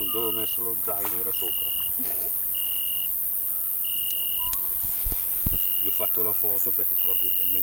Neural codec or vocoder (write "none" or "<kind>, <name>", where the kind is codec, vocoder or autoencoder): none